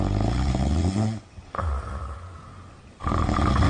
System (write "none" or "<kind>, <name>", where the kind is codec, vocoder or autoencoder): none